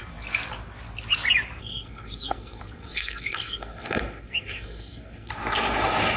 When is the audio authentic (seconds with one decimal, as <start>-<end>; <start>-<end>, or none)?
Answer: 0.0-1.6; 5.3-6.2